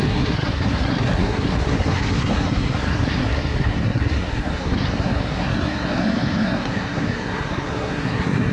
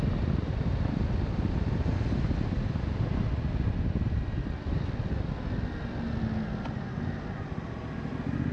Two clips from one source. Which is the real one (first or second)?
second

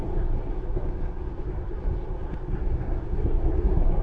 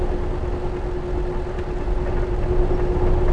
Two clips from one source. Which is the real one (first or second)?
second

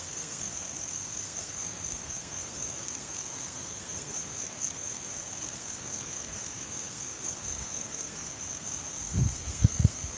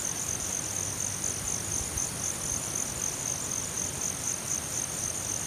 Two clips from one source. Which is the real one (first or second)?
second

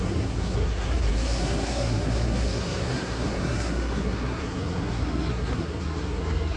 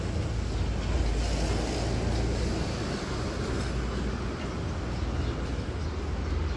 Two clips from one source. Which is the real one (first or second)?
second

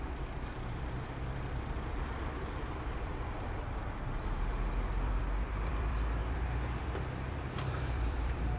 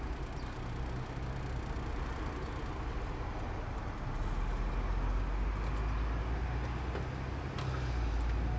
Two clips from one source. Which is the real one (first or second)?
second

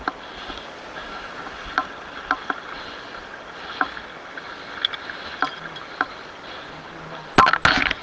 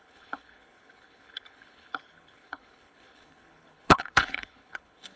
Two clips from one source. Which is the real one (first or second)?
first